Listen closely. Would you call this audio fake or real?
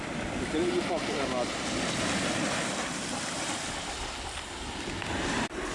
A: real